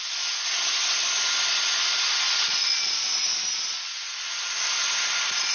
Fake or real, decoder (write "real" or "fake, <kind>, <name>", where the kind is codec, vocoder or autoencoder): real